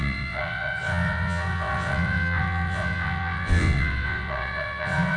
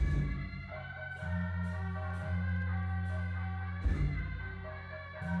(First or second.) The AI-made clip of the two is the first